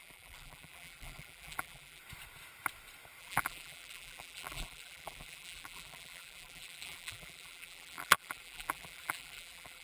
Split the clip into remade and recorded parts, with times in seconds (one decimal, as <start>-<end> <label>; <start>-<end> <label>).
0.0-2.0 remade; 2.0-3.2 recorded; 3.2-9.8 remade